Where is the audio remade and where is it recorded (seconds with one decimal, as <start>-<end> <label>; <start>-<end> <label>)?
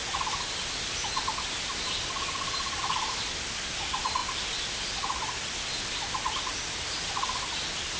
0.0-8.0 recorded